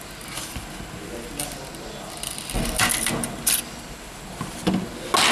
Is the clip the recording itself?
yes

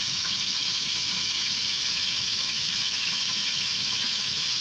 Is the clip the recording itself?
no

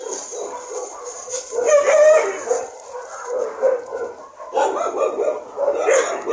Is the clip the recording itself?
yes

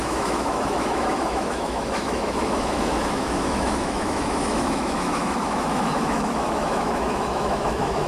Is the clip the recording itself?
no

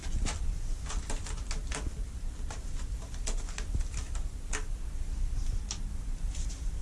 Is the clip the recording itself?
yes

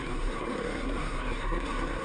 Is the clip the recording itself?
no